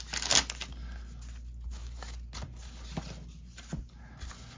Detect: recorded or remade recorded